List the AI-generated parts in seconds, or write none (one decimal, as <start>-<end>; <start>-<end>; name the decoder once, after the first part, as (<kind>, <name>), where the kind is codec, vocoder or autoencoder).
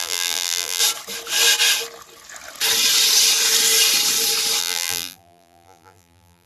0.0-0.8 (vocoder, BigVGAN v2); 4.6-6.5